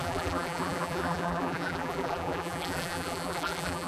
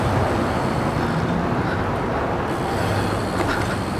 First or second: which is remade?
first